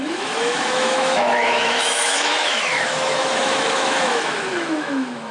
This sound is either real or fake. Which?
fake